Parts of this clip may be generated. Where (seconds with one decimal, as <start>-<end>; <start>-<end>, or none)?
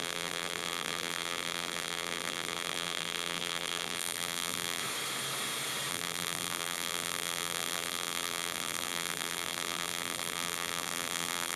0.0-4.8; 5.9-11.6